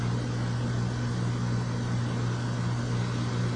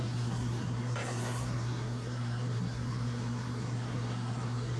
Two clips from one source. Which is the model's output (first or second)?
second